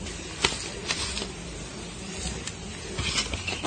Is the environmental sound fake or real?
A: real